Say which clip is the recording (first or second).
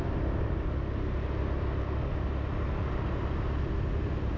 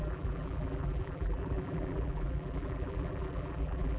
first